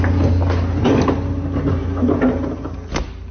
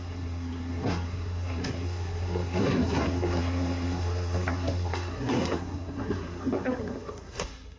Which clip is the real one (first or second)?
first